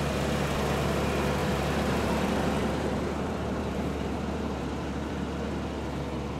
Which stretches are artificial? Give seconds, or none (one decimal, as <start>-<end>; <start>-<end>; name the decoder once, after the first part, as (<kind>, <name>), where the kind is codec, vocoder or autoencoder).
1.4-2.1 (vocoder, BigVGAN v2); 2.6-5.1